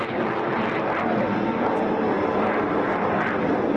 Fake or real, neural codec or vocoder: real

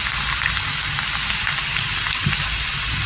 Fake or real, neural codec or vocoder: real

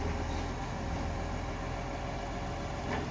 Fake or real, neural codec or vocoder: real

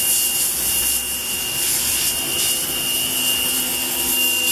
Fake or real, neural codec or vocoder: real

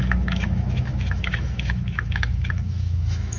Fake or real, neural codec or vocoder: fake, autoencoder, DAC-VAE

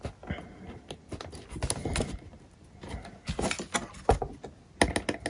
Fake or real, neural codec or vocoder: real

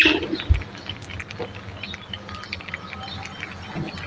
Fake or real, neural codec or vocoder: real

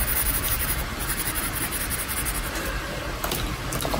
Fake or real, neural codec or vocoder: real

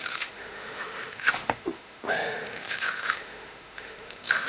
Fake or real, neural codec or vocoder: fake, autoencoder, DAC-VAE